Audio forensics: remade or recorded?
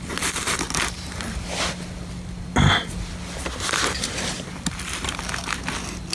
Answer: recorded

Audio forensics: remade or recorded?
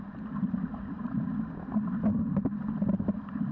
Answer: recorded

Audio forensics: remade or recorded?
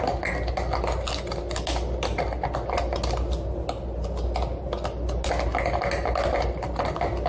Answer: recorded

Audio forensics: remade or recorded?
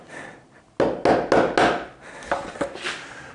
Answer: recorded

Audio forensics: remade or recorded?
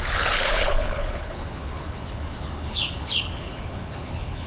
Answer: remade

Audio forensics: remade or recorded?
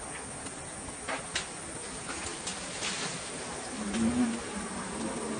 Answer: recorded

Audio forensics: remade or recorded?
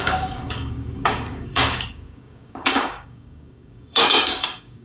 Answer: remade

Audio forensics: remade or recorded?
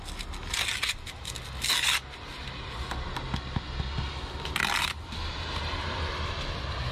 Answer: recorded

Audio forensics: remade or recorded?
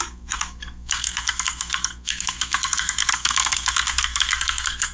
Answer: remade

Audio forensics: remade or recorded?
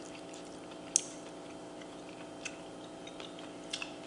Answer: recorded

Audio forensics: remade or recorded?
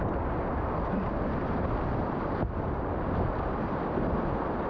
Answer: recorded